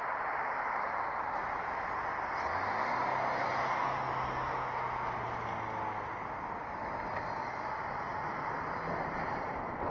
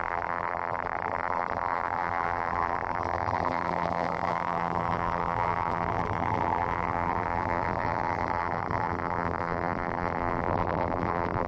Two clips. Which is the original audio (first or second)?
first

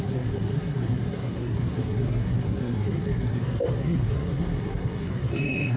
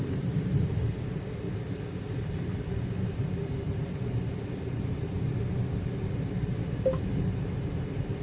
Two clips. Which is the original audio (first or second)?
second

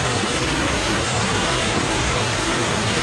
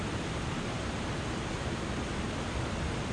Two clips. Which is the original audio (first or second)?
second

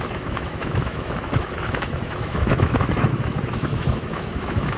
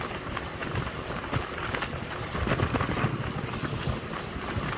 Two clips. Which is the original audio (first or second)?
second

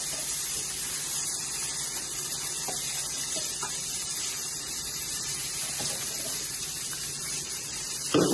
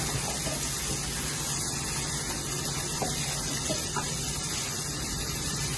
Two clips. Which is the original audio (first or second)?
second